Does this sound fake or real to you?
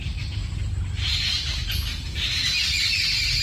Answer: real